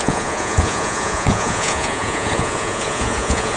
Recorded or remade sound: remade